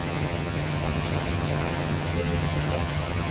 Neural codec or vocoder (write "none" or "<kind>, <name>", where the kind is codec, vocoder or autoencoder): vocoder, HiFi-GAN